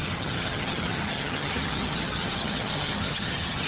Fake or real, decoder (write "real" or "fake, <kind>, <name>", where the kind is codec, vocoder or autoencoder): fake, vocoder, HiFi-GAN